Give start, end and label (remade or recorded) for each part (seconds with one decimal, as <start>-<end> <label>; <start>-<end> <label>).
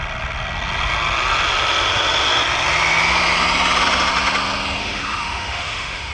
0.0-4.8 recorded; 4.8-6.1 remade